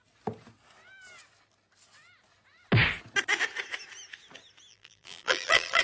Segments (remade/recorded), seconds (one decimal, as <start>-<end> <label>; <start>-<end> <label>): 0.0-4.7 recorded; 4.7-5.8 remade